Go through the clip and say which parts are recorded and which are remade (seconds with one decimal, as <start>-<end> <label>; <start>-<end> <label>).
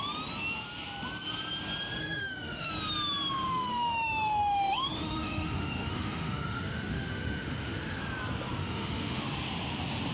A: 0.0-2.0 recorded; 2.0-2.7 remade; 2.7-3.5 recorded; 3.5-8.0 remade; 8.0-8.6 recorded; 8.6-9.2 remade; 9.2-10.1 recorded